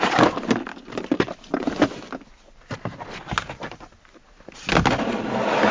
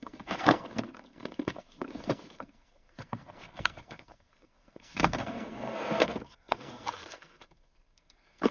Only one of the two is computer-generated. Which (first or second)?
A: second